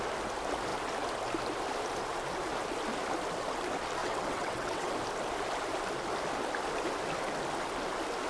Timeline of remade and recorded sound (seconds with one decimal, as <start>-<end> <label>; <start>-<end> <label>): 0.0-4.0 recorded; 4.0-4.9 remade; 4.9-8.3 recorded